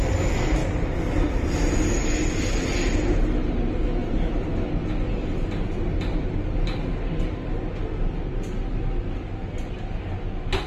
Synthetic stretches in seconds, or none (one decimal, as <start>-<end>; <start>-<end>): none